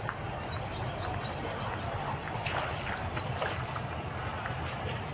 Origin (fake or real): real